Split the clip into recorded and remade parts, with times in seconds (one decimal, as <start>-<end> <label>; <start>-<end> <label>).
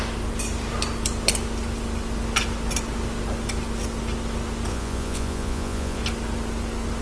0.0-4.7 recorded; 4.7-6.0 remade; 6.0-7.0 recorded